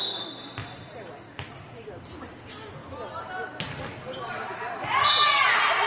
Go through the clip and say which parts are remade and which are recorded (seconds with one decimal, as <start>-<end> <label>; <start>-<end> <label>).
0.0-5.9 recorded